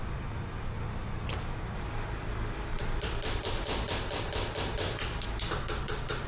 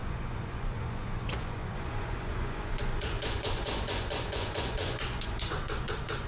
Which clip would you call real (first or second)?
first